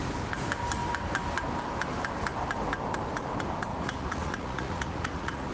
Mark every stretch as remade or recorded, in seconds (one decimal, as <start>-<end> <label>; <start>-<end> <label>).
0.0-3.7 recorded; 3.7-5.5 remade